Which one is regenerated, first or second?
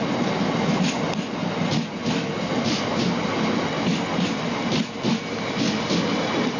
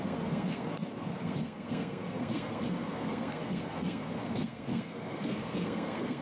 second